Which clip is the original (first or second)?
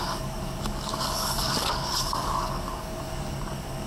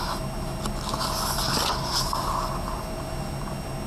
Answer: second